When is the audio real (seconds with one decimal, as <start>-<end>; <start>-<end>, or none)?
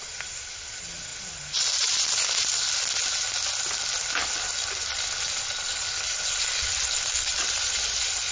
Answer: 0.0-8.3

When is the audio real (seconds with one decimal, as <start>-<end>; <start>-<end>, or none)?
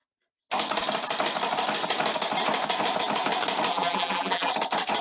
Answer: 0.0-3.7; 4.5-5.0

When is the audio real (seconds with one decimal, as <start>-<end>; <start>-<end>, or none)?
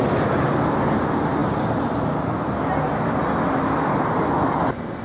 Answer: 0.0-5.0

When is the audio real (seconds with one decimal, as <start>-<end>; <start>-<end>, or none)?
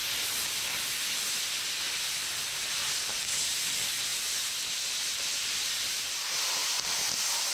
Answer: 0.0-4.1; 5.5-7.5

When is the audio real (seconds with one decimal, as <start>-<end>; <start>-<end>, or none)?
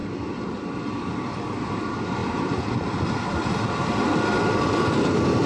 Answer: 0.0-5.5